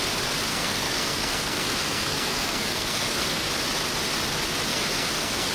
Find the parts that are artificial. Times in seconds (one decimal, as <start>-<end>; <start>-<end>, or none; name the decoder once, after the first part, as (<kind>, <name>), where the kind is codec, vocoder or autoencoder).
0.5-3.5 (codec, SNAC); 4.7-5.5